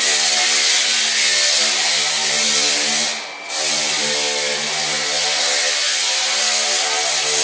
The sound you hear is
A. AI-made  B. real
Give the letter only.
B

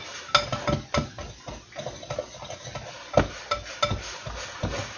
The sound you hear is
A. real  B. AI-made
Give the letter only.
A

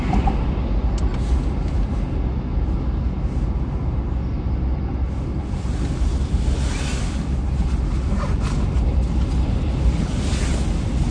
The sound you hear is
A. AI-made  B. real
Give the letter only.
B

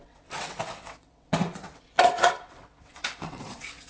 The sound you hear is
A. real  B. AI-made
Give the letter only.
B